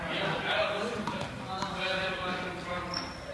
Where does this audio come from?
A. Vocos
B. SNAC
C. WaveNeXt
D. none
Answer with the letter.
D